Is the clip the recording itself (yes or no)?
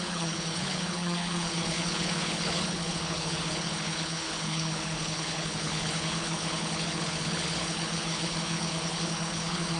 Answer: no